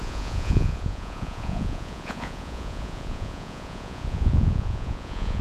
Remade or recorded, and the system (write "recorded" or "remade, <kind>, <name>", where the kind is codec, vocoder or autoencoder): remade, vocoder, Vocos